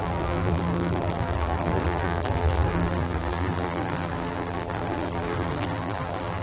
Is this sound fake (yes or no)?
yes